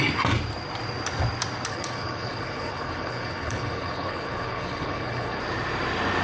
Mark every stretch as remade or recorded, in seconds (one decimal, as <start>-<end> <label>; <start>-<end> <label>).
0.0-1.7 recorded; 1.7-5.4 remade; 5.4-6.2 recorded